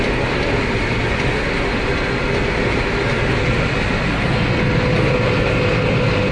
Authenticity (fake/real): real